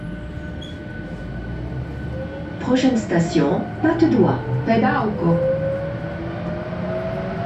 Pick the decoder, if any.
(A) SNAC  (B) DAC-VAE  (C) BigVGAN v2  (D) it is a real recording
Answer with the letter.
D